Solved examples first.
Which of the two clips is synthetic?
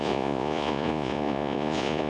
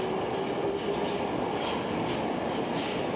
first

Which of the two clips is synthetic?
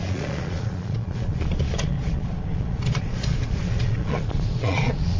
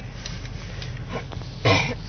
first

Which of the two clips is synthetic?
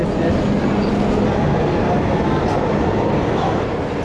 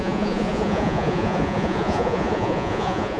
second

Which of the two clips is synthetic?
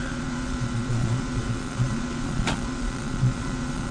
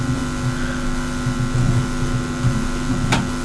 first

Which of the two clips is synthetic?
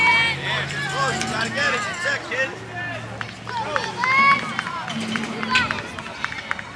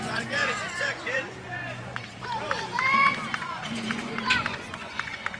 second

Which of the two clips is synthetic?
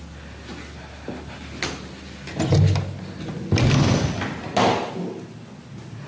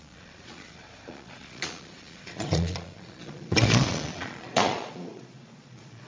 second